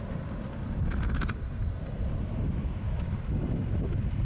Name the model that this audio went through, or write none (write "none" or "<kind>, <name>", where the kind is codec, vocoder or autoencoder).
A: none